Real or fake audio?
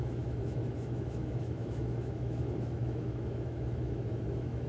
fake